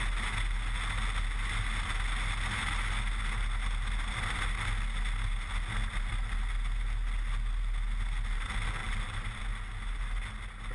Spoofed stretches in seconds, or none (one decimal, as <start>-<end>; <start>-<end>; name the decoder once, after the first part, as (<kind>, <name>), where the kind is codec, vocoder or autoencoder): 8.8-9.4 (vocoder, BigVGAN v2)